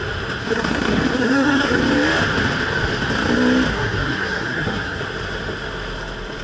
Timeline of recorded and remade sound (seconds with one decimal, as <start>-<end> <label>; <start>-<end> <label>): 0.0-0.4 recorded; 0.4-1.8 remade; 1.8-3.7 recorded; 3.7-5.0 remade; 5.0-6.4 recorded